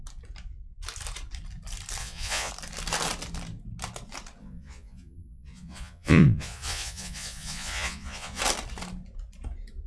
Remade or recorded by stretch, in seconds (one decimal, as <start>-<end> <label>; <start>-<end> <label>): 0.0-2.0 recorded; 2.0-2.5 remade; 2.5-4.4 recorded; 4.4-8.4 remade; 8.4-9.9 recorded